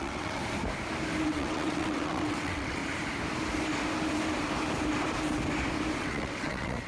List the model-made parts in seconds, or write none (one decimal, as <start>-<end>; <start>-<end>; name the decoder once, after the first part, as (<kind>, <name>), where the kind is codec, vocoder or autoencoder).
0.0-0.4 (vocoder, WaveNeXt); 1.3-2.8; 6.0-6.9